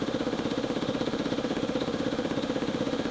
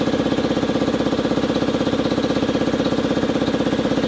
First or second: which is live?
second